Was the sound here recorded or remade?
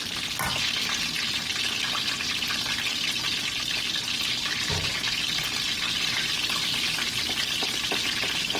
recorded